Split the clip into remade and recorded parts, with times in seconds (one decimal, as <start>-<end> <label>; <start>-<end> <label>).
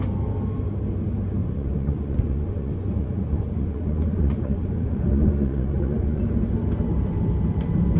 0.0-1.4 recorded; 1.4-6.2 remade; 6.2-8.0 recorded